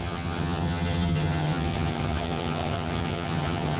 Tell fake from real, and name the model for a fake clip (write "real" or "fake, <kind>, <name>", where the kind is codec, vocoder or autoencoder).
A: fake, vocoder, HiFi-GAN